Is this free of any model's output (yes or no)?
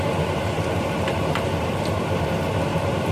no